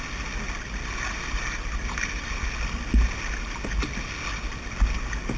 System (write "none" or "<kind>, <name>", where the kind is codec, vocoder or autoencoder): none